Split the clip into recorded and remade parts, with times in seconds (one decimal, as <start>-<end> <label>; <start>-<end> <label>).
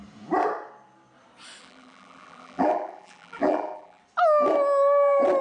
0.0-1.6 recorded; 1.6-4.0 remade; 4.0-5.4 recorded